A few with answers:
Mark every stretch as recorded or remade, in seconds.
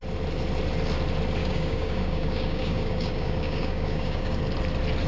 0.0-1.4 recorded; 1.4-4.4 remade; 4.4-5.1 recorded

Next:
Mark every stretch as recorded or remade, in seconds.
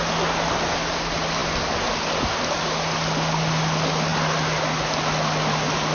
0.0-5.9 recorded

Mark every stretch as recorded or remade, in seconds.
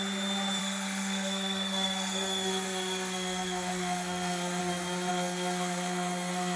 0.0-0.6 recorded; 0.6-4.6 remade; 4.6-5.1 recorded; 5.1-6.6 remade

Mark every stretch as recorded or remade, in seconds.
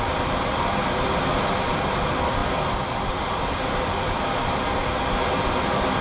0.0-6.0 recorded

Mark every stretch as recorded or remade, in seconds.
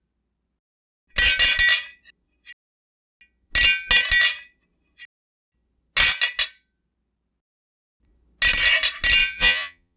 0.0-9.2 recorded; 9.2-10.0 remade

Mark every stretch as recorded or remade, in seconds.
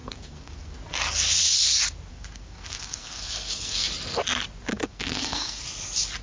0.0-0.8 remade; 0.8-2.1 recorded; 2.1-3.9 remade; 3.9-4.7 recorded; 4.7-5.6 remade; 5.6-6.2 recorded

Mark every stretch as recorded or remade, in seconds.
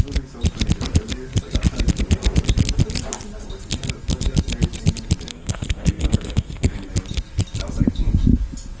0.0-5.3 recorded; 5.3-6.9 remade; 6.9-8.8 recorded